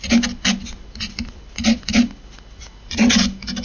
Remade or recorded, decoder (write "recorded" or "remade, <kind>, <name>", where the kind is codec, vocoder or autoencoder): recorded